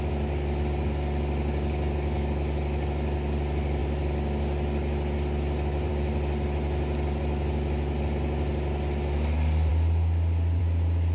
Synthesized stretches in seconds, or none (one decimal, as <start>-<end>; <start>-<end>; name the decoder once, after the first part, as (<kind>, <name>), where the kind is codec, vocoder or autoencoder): none